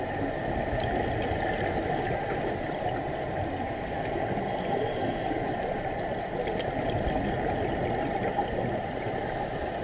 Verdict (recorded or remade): recorded